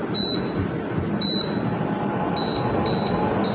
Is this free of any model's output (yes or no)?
yes